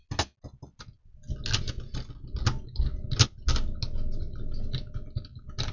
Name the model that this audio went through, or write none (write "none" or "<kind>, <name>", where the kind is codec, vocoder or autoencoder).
none